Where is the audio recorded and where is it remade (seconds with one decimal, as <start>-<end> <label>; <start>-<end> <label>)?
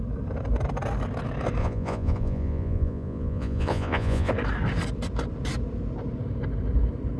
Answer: 0.0-1.6 recorded; 1.6-4.3 remade; 4.3-7.2 recorded